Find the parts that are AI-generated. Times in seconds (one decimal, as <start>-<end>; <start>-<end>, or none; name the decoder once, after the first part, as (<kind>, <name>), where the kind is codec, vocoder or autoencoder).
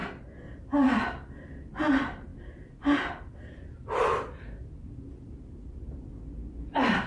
0.5-7.1 (vocoder, BigVGAN v2)